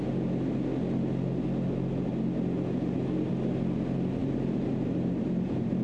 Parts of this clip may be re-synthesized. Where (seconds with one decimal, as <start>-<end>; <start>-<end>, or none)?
4.2-5.8